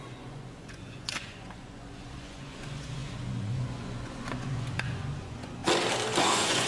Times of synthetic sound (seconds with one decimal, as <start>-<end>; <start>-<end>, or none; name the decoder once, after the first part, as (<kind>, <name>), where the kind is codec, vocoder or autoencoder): 0.0-5.6 (vocoder, Vocos); 6.2-6.7